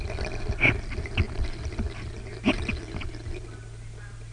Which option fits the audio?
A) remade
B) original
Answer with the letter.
B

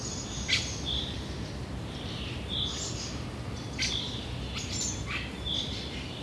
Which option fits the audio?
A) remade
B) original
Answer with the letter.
B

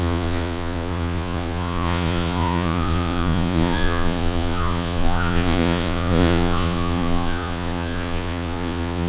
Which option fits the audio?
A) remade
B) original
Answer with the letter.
A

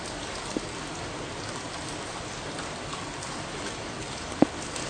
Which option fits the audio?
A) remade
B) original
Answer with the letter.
B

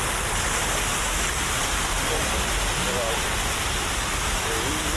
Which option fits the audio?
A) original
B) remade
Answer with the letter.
A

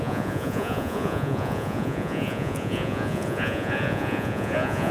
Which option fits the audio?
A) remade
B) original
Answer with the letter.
A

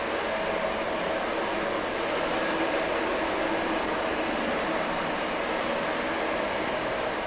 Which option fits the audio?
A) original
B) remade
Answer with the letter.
A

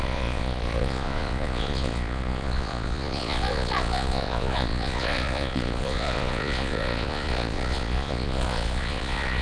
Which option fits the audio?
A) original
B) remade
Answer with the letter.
B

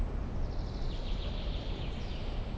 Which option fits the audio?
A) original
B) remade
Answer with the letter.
A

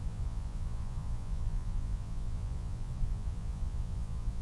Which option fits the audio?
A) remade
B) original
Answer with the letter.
A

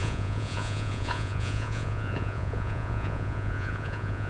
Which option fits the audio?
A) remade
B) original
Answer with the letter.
A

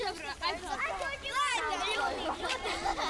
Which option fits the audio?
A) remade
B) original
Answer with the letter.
B